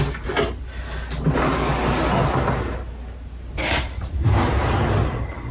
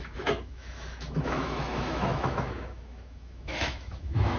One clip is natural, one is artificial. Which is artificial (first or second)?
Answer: second